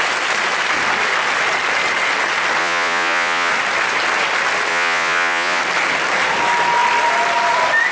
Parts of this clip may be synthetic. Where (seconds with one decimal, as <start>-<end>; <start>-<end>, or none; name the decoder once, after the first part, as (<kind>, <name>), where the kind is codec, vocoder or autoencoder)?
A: 2.6-3.5 (vocoder, Vocos); 4.7-5.6